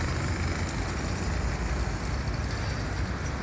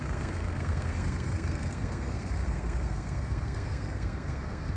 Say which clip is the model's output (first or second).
second